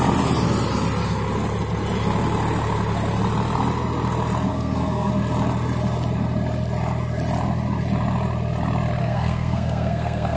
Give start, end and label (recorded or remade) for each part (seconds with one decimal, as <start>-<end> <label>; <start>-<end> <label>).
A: 0.0-4.5 recorded; 4.5-5.1 remade; 5.1-9.0 recorded; 9.0-10.4 remade